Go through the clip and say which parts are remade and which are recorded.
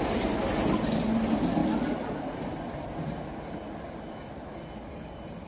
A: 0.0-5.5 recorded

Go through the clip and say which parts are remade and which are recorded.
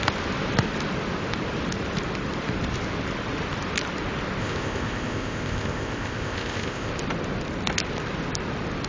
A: 0.0-4.4 recorded; 4.4-6.9 remade; 6.9-8.9 recorded